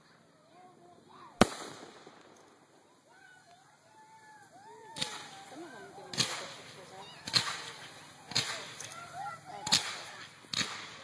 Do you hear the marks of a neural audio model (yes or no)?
no